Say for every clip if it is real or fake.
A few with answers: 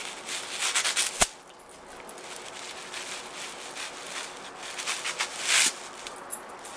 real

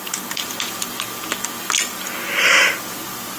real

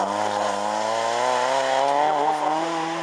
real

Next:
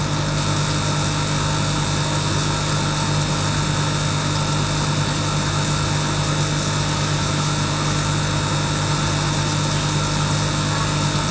real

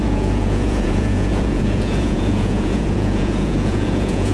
fake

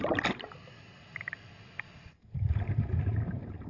real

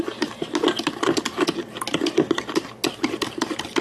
real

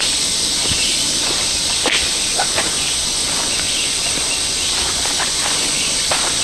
fake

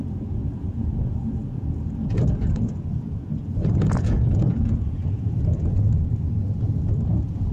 fake